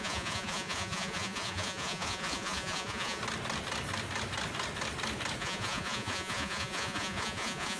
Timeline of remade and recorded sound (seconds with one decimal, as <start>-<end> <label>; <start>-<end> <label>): 0.0-3.2 remade; 3.2-5.4 recorded; 5.4-7.8 remade